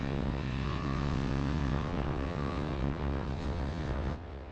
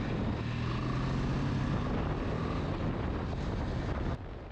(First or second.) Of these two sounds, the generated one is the first